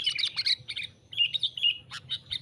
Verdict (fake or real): real